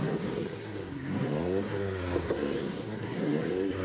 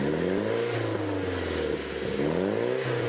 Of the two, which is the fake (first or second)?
first